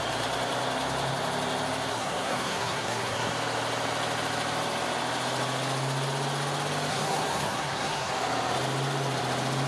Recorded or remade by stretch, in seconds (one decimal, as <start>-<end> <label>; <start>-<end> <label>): 0.0-1.9 recorded; 1.9-3.3 remade; 3.3-6.9 recorded; 6.9-8.1 remade; 8.1-9.7 recorded